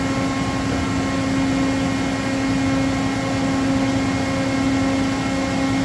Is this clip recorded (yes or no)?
yes